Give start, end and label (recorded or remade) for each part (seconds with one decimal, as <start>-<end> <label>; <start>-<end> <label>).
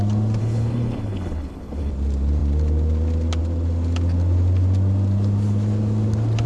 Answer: 0.0-0.4 recorded; 0.4-1.9 remade; 1.9-6.5 recorded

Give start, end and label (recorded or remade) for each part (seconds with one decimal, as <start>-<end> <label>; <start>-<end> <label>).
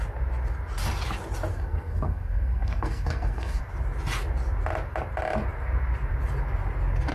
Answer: 0.0-1.5 recorded; 1.5-3.6 remade; 3.6-7.1 recorded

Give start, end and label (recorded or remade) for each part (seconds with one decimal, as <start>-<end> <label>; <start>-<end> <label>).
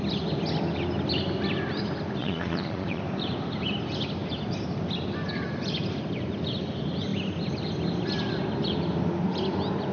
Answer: 0.0-2.2 recorded; 2.2-3.0 remade; 3.0-9.9 recorded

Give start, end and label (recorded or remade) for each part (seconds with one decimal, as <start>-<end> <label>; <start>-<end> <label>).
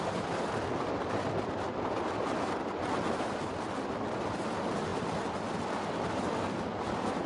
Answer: 0.0-7.3 recorded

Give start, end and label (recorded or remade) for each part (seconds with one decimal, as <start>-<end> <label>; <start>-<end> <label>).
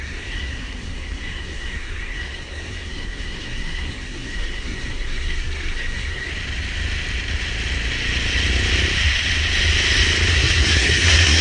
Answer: 0.0-6.3 remade; 6.3-10.3 recorded; 10.3-11.4 remade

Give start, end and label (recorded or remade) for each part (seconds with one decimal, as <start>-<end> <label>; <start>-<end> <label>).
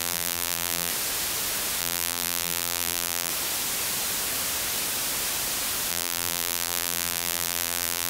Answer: 0.0-0.9 remade; 0.9-1.8 recorded; 1.8-3.3 remade; 3.3-5.9 recorded; 5.9-8.1 remade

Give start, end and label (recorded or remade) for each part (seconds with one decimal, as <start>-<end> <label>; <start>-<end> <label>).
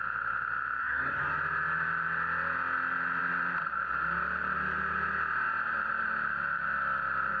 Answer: 0.0-0.8 recorded; 0.8-1.3 remade; 1.3-7.4 recorded